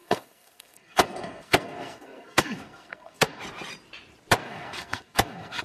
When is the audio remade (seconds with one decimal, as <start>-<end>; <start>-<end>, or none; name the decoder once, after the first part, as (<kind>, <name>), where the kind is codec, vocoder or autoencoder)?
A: 0.0-3.4 (codec, SNAC); 4.4-5.6